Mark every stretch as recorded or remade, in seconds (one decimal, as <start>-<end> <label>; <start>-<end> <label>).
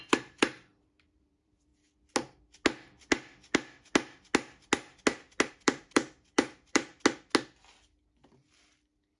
0.0-1.7 remade; 1.7-5.5 recorded; 5.5-6.9 remade; 6.9-9.2 recorded